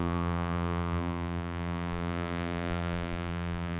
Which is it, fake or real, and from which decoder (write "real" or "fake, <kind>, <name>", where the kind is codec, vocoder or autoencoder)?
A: fake, vocoder, BigVGAN v2